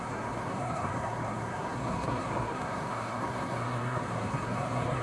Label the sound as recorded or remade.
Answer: remade